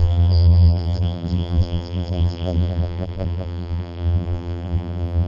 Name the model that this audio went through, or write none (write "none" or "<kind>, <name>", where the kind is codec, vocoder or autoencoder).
vocoder, BigVGAN v2